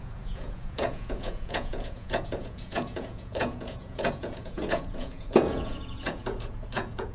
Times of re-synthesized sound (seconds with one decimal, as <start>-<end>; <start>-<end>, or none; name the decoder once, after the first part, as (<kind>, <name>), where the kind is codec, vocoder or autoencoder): 0.0-7.1 (vocoder, Vocos)

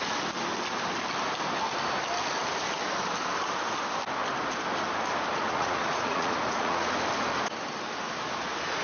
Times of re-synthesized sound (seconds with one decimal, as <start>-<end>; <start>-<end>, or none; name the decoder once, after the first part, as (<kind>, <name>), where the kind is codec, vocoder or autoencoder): 5.3-6.9 (vocoder, Vocos)

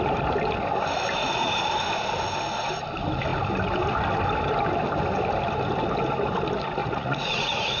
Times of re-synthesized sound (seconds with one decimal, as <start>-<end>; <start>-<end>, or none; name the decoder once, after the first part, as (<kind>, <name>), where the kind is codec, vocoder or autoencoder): 1.2-1.7 (vocoder, Vocos); 6.8-7.8

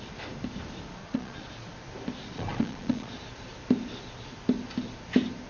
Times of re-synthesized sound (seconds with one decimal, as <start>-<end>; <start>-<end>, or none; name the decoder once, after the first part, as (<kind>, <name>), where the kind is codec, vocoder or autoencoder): 1.0-1.5 (vocoder, Vocos); 2.3-3.1

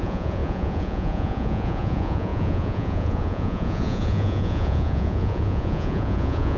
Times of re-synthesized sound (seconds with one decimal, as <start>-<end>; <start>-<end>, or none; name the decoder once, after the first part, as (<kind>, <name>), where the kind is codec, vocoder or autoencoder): 0.0-6.6 (vocoder, Vocos)